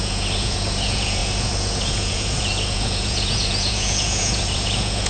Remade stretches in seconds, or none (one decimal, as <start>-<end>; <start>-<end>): 0.0-5.1